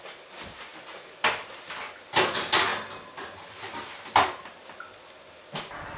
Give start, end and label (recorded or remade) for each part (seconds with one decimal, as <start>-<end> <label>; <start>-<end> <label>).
0.0-6.0 recorded